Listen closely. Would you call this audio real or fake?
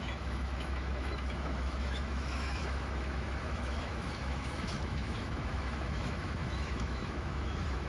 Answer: fake